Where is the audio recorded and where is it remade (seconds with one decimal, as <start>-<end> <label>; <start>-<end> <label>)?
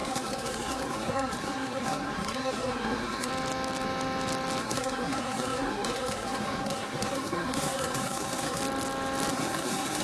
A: 0.0-3.3 remade; 3.3-4.6 recorded; 4.6-8.6 remade; 8.6-9.3 recorded; 9.3-10.0 remade